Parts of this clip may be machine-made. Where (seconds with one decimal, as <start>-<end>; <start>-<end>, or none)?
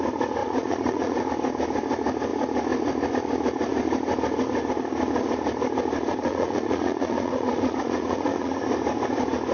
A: 0.4-1.3; 6.2-8.6